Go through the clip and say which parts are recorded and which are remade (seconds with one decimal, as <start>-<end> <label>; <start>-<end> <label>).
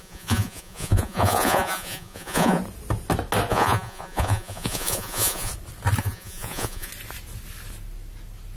0.0-2.6 remade; 2.6-3.5 recorded; 3.5-5.5 remade; 5.5-6.0 recorded; 6.0-6.9 remade; 6.9-8.6 recorded